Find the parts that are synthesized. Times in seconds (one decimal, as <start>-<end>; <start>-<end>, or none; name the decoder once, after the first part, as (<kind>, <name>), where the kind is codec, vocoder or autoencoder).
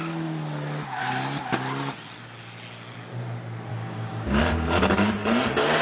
3.7-4.4 (codec, DAC)